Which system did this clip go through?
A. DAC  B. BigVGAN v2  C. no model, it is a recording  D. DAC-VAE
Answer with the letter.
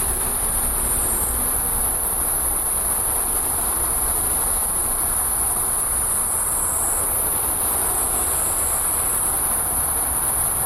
B